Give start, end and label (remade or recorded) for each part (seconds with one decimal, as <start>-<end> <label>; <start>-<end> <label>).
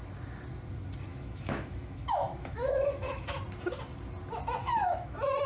0.0-1.1 recorded; 1.1-3.4 remade; 3.4-4.6 recorded; 4.6-5.5 remade